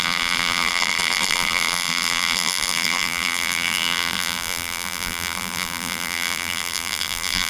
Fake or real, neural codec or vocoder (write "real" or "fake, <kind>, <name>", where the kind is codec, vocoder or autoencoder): fake, vocoder, BigVGAN v2